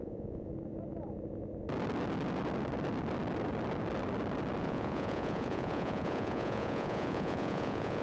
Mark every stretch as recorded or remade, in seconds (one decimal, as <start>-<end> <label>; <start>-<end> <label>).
0.0-0.5 remade; 0.5-4.6 recorded; 4.6-8.0 remade